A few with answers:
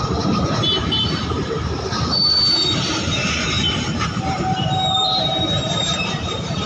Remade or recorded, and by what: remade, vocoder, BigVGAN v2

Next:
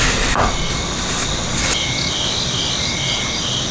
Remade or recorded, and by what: recorded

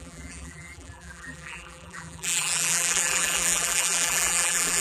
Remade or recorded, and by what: remade, vocoder, BigVGAN v2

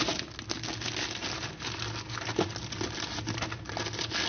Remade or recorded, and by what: recorded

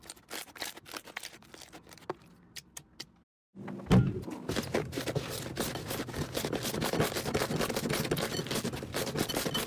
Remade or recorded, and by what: recorded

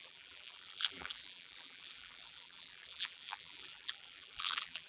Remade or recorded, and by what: remade, vocoder, BigVGAN v2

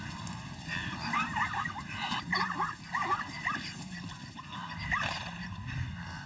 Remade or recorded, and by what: remade, vocoder, BigVGAN v2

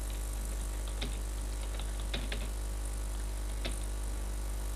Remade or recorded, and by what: recorded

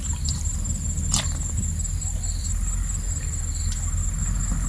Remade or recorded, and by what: recorded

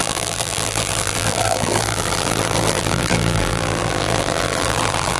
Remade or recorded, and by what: remade, vocoder, BigVGAN v2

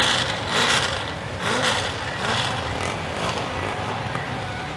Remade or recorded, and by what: remade, vocoder, BigVGAN v2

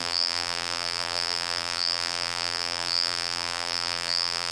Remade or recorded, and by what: remade, vocoder, BigVGAN v2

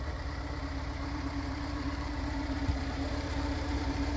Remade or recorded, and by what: remade, vocoder, BigVGAN v2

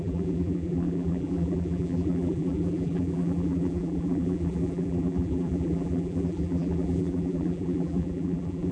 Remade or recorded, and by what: remade, vocoder, BigVGAN v2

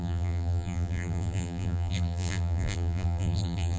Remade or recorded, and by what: remade, vocoder, BigVGAN v2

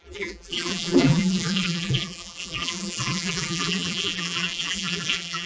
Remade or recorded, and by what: remade, vocoder, BigVGAN v2